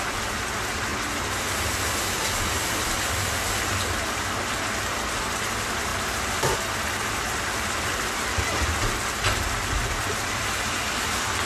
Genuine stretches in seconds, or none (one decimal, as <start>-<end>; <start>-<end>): 0.0-5.9; 8.4-11.5